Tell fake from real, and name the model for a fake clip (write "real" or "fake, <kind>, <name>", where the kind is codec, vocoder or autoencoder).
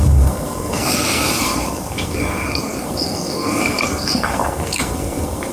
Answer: fake, codec, SNAC